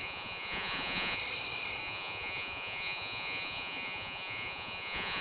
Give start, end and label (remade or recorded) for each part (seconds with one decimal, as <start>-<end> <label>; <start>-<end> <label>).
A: 0.0-1.2 remade; 1.2-1.8 recorded; 1.8-5.2 remade